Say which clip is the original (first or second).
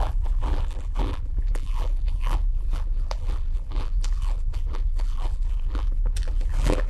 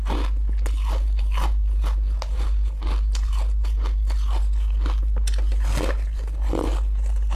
second